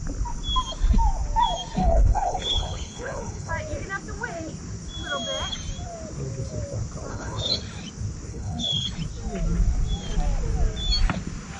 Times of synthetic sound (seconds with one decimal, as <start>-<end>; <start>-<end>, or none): 1.8-3.5; 7.1-7.6; 8.3-8.9